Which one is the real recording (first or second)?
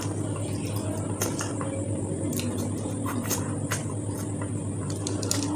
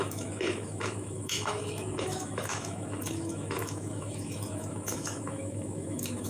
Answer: first